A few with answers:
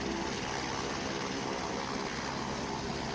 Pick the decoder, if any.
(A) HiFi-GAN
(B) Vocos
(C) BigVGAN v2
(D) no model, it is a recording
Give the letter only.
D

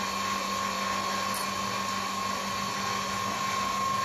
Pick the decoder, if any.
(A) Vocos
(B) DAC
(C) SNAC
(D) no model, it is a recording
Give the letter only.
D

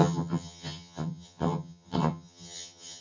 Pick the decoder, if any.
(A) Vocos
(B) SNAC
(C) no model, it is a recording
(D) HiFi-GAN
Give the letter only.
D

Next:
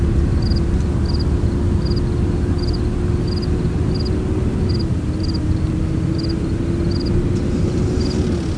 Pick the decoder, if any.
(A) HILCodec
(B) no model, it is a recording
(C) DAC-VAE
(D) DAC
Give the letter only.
B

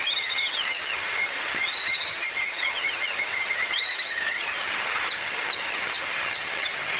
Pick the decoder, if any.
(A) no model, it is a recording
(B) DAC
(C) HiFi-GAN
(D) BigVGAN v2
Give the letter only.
C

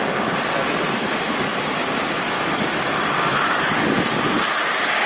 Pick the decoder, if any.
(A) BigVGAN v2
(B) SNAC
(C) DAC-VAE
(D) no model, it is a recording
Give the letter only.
D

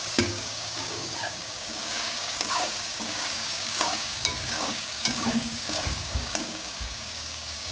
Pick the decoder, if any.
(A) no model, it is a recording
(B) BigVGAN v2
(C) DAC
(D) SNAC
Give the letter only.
C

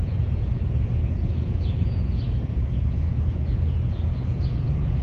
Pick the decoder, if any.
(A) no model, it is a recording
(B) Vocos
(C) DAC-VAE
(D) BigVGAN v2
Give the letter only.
B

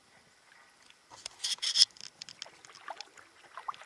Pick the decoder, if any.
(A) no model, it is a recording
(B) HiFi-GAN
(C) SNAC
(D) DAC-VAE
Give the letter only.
A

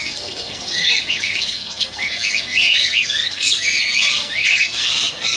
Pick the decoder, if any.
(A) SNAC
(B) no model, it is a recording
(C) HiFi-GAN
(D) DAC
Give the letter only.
A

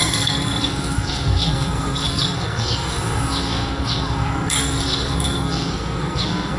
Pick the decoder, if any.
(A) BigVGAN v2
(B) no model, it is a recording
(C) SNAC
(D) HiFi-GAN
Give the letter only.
C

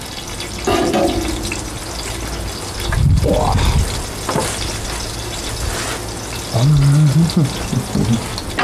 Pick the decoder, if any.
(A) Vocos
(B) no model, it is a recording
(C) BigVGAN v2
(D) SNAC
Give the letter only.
B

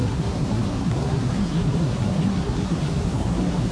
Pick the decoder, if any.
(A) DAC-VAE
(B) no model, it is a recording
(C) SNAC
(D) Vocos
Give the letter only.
C